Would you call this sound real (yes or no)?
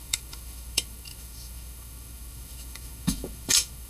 no